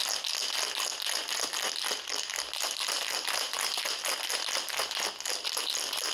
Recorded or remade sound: recorded